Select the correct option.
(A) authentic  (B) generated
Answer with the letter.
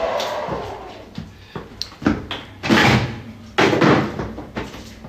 A